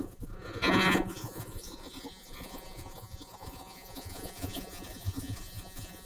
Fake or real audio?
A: fake